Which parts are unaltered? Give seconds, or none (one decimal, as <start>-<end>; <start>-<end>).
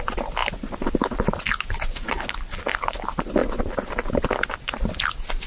0.0-5.5